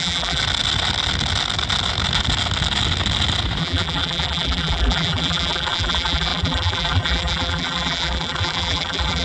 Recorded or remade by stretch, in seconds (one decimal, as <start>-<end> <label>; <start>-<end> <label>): 0.0-0.4 remade; 0.4-3.6 recorded; 3.6-9.2 remade